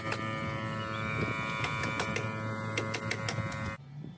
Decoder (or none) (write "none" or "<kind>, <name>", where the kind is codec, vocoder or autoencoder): none